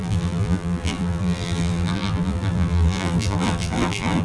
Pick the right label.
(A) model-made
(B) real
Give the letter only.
A